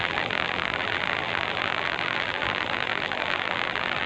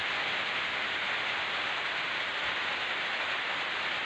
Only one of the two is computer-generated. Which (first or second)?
first